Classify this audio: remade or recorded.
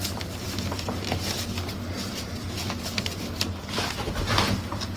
recorded